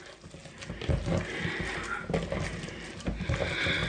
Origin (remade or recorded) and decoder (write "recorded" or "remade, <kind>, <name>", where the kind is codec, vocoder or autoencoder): recorded